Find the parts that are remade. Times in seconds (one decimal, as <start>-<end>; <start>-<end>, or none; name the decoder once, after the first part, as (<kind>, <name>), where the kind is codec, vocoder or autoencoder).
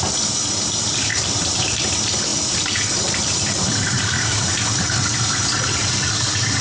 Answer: 1.1-1.8 (vocoder, BigVGAN v2); 2.3-4.5; 5.8-6.6